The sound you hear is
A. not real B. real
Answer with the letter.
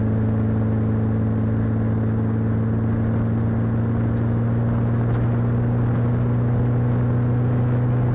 B